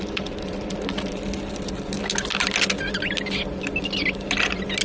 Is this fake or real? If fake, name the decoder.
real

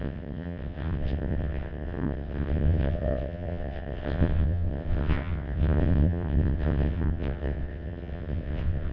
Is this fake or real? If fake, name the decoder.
fake, vocoder, WaveNeXt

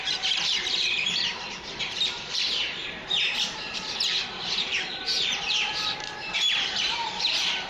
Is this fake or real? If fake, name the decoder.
fake, vocoder, BigVGAN v2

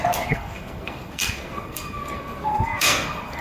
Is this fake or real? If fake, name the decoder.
fake, codec, SNAC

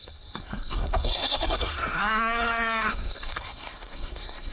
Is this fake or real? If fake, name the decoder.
fake, codec, SNAC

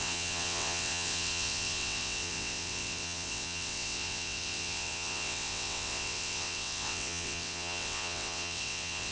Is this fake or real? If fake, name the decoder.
fake, vocoder, WaveNeXt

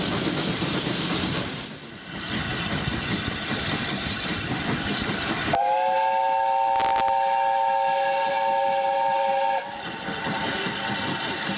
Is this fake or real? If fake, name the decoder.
real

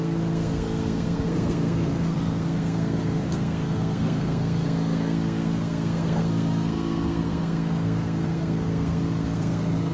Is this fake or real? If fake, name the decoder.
fake, codec, SNAC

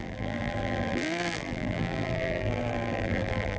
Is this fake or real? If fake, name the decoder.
fake, vocoder, BigVGAN v2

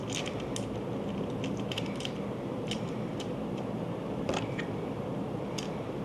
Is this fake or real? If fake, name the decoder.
real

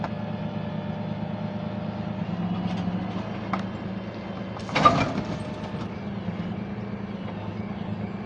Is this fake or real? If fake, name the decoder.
real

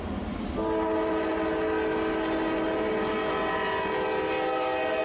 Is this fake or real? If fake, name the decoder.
real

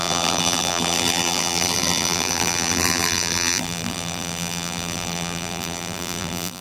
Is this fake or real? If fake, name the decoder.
fake, vocoder, BigVGAN v2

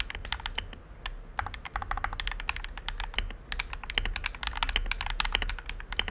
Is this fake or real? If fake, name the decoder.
real